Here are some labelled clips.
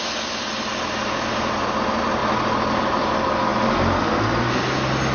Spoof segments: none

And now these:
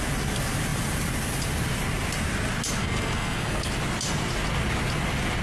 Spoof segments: 2.8-3.7 (codec, SNAC)

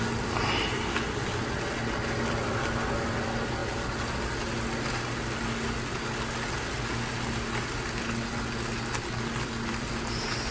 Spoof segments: none

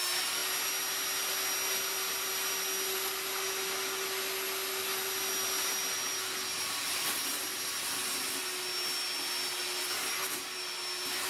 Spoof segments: none

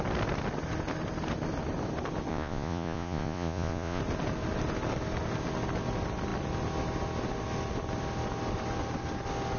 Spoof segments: 2.3-4.0 (vocoder, Vocos)

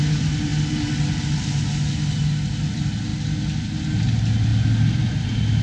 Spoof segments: 4.5-5.6 (vocoder, BigVGAN v2)